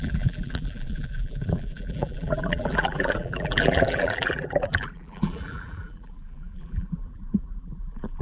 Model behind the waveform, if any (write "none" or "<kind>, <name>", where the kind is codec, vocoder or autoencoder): vocoder, BigVGAN v2